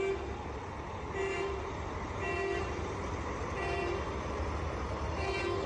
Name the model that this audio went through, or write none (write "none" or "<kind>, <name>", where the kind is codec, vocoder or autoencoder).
none